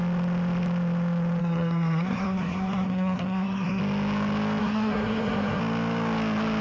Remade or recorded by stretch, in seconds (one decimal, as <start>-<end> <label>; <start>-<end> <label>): 0.0-1.4 recorded; 1.4-3.8 remade; 3.8-4.6 recorded; 4.6-5.6 remade; 5.6-6.6 recorded